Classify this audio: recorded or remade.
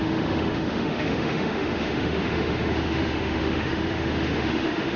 remade